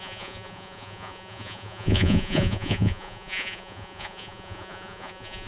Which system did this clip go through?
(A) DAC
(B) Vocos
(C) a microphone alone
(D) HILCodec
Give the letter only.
B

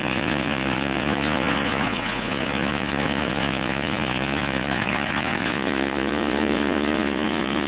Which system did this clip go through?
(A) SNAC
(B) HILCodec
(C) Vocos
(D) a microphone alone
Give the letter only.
C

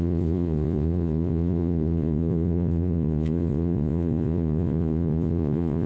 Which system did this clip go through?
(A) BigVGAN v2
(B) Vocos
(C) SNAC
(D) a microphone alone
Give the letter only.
B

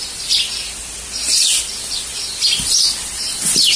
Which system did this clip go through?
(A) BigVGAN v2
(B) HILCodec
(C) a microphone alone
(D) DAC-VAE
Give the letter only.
C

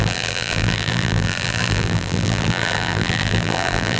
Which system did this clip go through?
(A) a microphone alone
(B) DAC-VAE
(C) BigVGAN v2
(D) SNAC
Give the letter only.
C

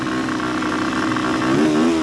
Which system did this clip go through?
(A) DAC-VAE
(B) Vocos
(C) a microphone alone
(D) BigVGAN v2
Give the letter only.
C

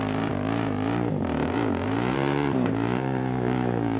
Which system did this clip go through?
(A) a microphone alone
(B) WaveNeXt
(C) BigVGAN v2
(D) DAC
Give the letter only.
C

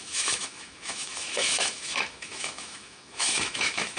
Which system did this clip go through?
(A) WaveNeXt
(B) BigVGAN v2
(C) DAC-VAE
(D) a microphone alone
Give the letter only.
C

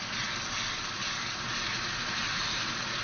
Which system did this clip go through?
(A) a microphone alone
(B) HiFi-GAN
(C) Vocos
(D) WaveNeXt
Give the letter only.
A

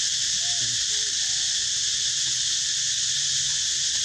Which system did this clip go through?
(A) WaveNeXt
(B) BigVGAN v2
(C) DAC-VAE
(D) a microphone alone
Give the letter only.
D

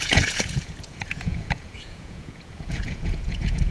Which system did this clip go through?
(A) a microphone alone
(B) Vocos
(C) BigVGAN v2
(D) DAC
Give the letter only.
B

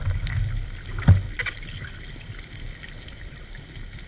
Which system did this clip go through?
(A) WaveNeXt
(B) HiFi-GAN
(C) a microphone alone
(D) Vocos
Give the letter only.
C